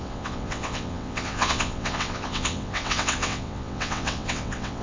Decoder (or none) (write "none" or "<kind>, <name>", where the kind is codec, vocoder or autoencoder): vocoder, WaveNeXt